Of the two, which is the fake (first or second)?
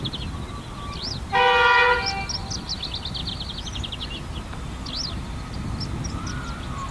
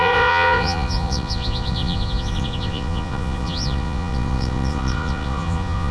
second